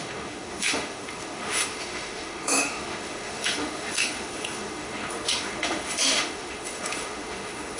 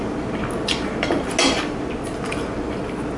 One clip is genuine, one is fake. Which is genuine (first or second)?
second